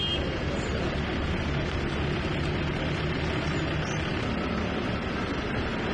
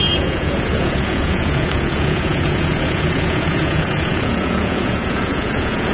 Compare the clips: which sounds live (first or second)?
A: first